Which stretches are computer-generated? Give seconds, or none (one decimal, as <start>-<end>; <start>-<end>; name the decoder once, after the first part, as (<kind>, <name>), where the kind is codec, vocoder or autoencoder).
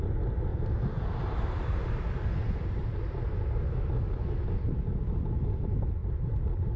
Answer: 0.5-1.9 (vocoder, BigVGAN v2)